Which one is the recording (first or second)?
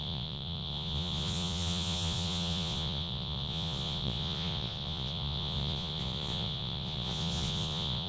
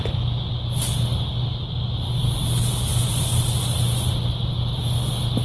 second